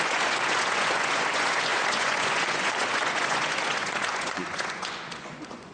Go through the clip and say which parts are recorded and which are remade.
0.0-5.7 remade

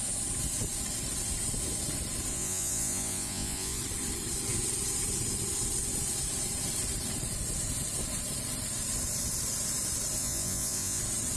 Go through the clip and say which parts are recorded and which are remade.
0.0-2.3 recorded; 2.3-3.8 remade; 3.8-10.2 recorded; 10.2-11.0 remade; 11.0-11.4 recorded

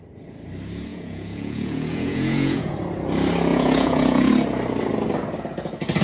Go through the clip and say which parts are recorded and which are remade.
0.0-0.9 recorded; 0.9-2.7 remade; 2.7-3.5 recorded; 3.5-4.3 remade; 4.3-6.0 recorded

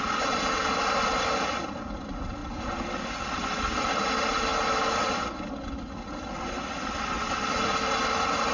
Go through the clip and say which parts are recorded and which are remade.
0.0-8.5 recorded

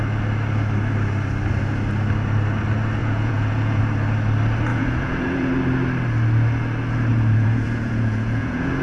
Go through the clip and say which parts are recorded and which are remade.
0.0-3.0 recorded; 3.0-3.8 remade; 3.8-4.7 recorded; 4.7-5.5 remade; 5.5-7.1 recorded; 7.1-8.8 remade